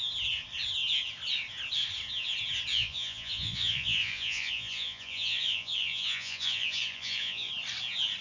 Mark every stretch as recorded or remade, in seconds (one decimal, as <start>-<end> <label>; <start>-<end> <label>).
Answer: 0.0-2.7 recorded; 2.7-7.5 remade; 7.5-8.2 recorded